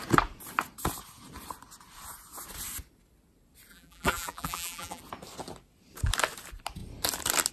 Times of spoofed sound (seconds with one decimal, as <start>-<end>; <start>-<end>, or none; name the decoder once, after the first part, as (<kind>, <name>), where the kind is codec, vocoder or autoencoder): 3.7-5.0 (vocoder, BigVGAN v2)